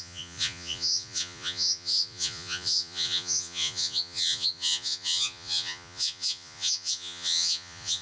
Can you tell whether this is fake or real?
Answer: fake